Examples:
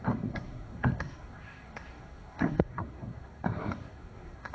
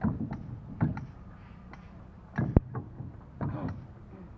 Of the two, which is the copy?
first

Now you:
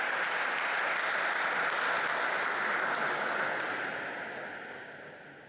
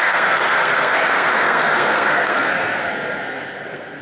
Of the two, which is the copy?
second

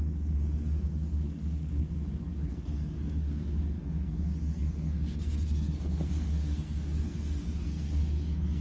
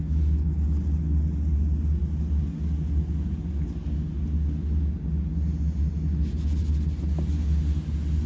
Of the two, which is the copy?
first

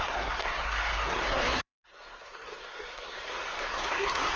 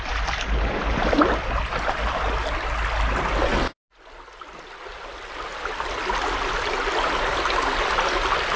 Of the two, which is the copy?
first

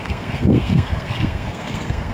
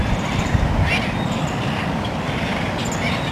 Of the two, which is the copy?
first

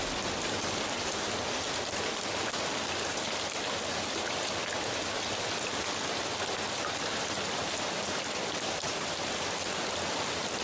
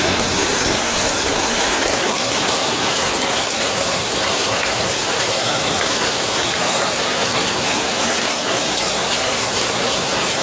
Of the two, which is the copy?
second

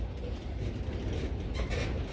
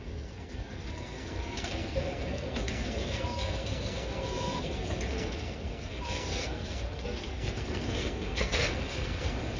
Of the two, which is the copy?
second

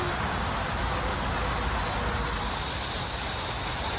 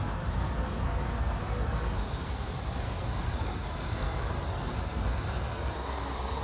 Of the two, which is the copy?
second